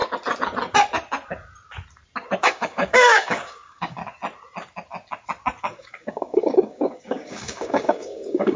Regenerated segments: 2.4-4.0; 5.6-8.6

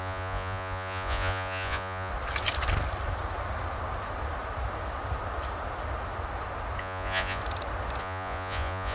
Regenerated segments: 0.0-2.1; 6.8-7.4; 8.0-8.9

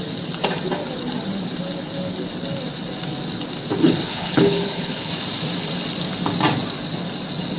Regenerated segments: 3.8-5.1

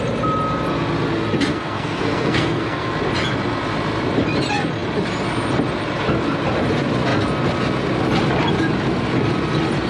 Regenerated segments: 1.5-2.9

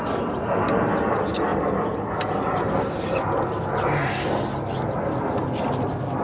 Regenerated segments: none

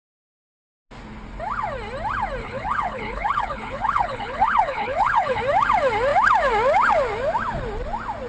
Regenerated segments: 2.4-5.4

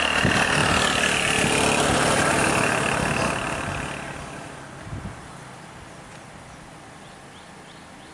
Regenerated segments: none